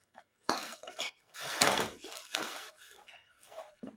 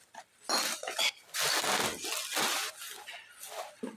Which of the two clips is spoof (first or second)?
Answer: first